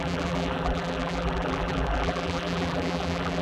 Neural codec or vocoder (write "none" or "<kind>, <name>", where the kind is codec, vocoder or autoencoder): vocoder, BigVGAN v2